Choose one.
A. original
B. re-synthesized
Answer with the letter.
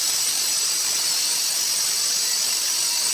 B